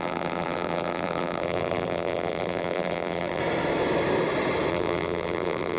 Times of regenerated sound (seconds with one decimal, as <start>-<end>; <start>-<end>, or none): 0.0-3.4; 4.7-5.8